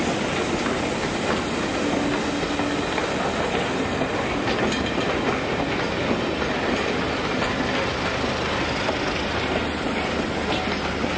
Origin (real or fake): real